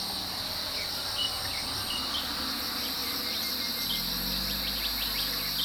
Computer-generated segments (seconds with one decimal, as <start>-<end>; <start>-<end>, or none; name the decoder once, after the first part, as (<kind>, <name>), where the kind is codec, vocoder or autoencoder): none